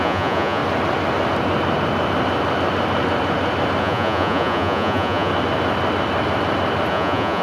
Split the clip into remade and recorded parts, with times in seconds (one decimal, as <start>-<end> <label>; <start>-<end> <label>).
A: 0.0-0.6 remade; 0.6-3.8 recorded; 3.8-5.3 remade; 5.3-6.9 recorded; 6.9-7.4 remade